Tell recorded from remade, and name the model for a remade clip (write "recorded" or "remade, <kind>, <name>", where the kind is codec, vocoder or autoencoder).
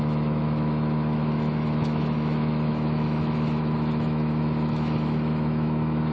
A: remade, autoencoder, DAC-VAE